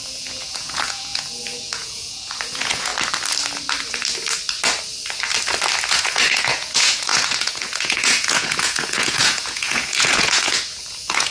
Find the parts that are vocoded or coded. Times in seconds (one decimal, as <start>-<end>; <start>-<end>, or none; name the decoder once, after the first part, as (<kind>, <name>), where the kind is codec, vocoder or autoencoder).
0.0-2.9 (vocoder, Vocos); 5.9-11.3